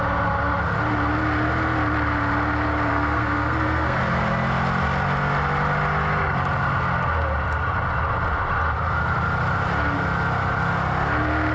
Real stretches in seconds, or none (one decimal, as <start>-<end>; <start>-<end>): 0.0-2.9; 4.0-11.5